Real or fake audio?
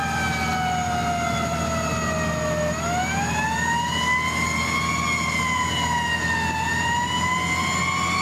real